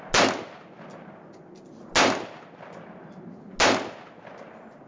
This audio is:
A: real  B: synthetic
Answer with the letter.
A